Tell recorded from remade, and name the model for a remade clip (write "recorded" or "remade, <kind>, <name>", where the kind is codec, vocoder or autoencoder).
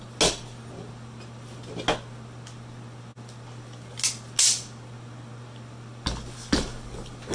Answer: recorded